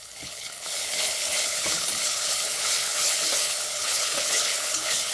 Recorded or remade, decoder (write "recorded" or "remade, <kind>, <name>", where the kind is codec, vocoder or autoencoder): remade, codec, HILCodec